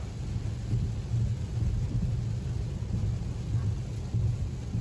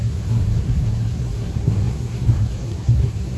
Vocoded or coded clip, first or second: second